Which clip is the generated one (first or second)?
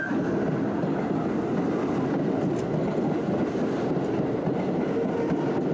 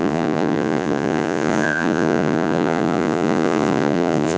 second